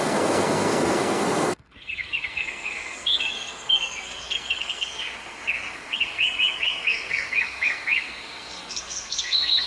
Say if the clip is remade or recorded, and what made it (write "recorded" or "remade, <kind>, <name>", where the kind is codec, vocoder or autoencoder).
remade, codec, SNAC